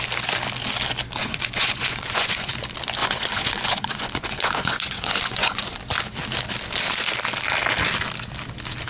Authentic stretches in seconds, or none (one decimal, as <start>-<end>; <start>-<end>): 0.0-1.2; 2.5-3.0; 5.8-8.9